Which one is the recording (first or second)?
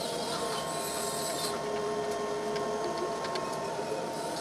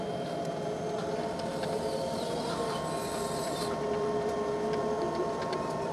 first